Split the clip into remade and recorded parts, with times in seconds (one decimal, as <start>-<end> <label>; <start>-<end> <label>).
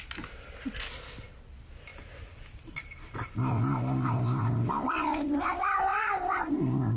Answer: 0.0-1.9 recorded; 1.9-5.4 remade; 5.4-5.9 recorded; 5.9-6.5 remade; 6.5-7.0 recorded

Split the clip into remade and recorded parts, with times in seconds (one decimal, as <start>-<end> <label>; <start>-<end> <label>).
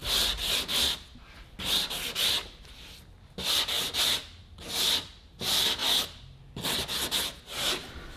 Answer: 0.0-8.2 recorded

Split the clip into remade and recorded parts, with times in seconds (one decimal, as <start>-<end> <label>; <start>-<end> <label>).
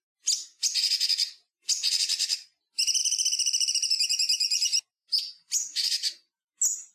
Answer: 0.0-3.0 recorded; 3.0-6.4 remade; 6.4-6.9 recorded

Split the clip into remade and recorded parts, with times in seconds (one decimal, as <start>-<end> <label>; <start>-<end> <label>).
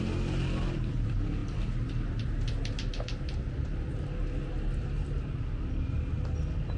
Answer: 0.0-6.8 recorded